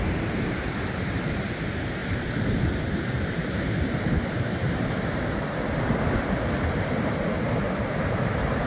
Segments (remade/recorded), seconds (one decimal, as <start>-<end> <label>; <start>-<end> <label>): 0.0-8.7 remade